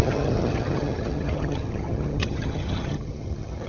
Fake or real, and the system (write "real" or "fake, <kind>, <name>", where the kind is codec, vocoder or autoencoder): fake, vocoder, HiFi-GAN